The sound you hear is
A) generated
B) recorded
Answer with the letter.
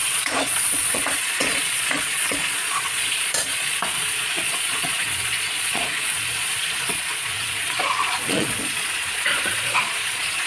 A